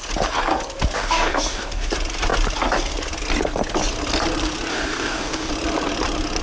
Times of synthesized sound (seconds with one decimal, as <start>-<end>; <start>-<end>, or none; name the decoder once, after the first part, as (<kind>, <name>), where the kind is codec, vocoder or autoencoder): 1.0-1.9 (codec, DAC); 4.7-5.5